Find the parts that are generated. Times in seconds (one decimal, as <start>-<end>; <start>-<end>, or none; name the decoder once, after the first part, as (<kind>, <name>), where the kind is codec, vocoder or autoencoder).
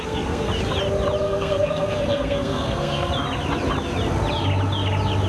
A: 0.0-0.5 (codec, SNAC); 1.2-3.1